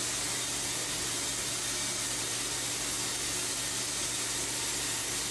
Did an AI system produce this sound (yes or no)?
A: no